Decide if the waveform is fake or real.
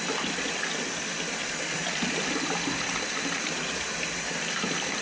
real